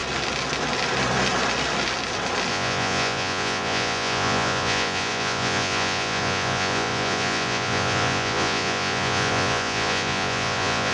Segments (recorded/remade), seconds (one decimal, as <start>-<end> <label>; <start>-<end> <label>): 0.0-2.5 recorded; 2.5-10.9 remade